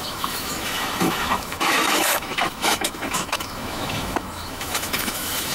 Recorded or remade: remade